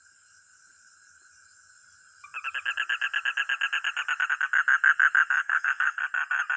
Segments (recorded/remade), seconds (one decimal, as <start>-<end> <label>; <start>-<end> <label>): 0.0-5.4 recorded; 5.4-6.0 remade; 6.0-6.6 recorded